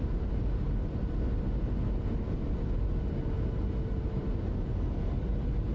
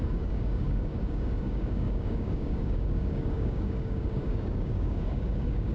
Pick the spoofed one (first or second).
second